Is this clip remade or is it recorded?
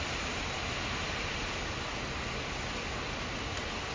recorded